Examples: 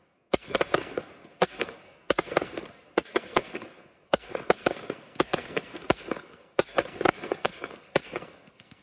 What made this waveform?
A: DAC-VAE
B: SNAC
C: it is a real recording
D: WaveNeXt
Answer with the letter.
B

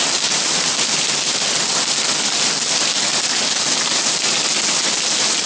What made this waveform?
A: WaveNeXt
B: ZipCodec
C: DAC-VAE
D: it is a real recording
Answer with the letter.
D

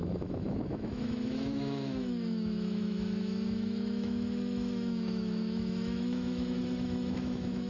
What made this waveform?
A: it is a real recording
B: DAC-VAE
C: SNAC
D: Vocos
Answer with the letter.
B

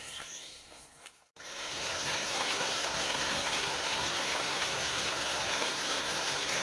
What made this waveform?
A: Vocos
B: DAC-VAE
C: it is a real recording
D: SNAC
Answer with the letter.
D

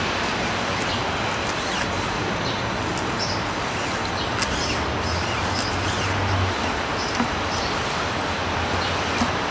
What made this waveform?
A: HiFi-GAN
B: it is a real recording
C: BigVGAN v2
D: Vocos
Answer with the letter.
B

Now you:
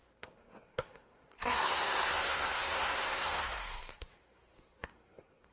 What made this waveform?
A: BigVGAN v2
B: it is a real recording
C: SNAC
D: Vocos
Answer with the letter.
C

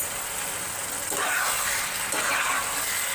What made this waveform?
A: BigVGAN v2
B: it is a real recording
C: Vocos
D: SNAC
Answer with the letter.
B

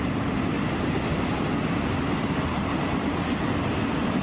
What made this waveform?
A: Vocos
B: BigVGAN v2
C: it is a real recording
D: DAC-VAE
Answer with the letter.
C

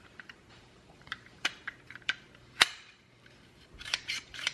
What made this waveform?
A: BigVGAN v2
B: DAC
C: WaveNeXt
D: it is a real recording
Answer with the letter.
A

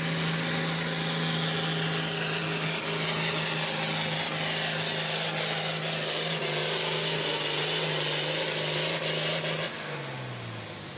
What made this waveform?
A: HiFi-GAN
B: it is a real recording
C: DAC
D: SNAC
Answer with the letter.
B